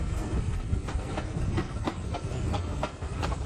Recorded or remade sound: remade